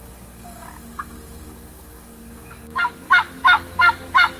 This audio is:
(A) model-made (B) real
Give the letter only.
A